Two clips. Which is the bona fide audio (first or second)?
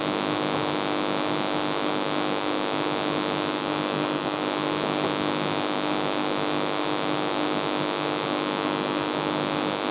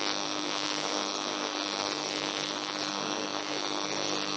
first